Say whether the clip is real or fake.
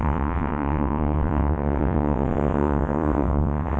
fake